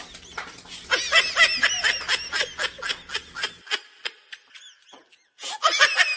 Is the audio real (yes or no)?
yes